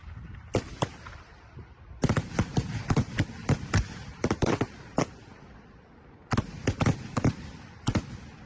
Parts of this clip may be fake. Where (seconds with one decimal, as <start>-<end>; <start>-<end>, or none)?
0.0-1.5; 2.5-3.1; 4.0-5.0